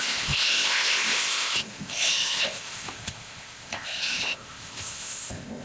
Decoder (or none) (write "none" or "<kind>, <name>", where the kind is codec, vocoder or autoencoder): codec, ZipCodec